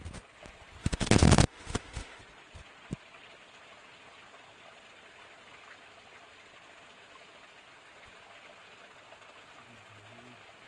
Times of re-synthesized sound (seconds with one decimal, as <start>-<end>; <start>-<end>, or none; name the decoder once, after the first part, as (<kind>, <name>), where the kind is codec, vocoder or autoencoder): 0.8-2.2 (autoencoder, DAC-VAE)